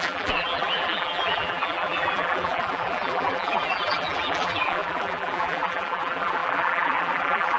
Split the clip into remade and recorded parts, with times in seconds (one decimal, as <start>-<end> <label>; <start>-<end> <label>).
0.0-7.6 remade